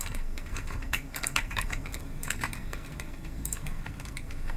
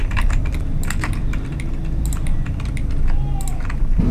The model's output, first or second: first